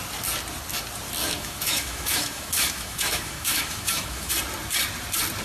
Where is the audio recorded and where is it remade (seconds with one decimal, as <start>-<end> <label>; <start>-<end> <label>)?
0.0-1.2 recorded; 1.2-4.3 remade; 4.3-5.4 recorded